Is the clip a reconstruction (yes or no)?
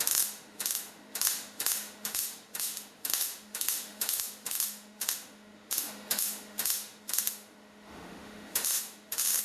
yes